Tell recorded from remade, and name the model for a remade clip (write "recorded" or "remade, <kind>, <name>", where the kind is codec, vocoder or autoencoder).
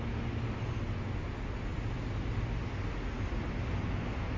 recorded